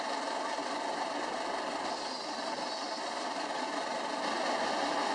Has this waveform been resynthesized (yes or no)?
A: no